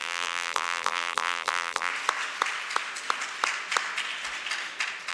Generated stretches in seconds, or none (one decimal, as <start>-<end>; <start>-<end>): 0.0-1.9